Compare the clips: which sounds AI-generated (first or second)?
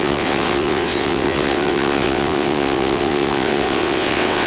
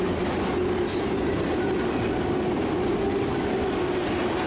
first